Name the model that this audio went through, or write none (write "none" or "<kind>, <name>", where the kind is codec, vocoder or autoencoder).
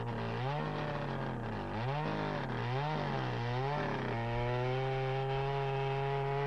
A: none